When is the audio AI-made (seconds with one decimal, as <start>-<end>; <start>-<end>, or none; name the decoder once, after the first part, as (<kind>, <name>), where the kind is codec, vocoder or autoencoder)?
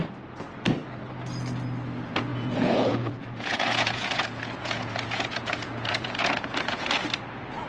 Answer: 2.3-6.9 (vocoder, Vocos)